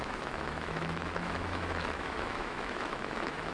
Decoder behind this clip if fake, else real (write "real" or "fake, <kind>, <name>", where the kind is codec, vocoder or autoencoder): fake, autoencoder, DAC-VAE